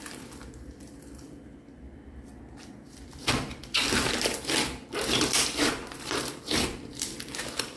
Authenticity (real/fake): fake